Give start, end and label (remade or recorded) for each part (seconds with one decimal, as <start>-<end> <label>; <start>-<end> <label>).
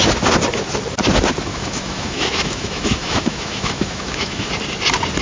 0.0-1.5 recorded; 1.5-4.5 remade; 4.5-5.2 recorded